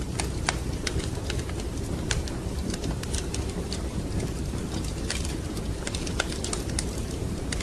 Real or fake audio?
fake